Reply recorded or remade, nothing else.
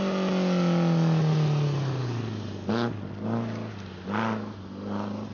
recorded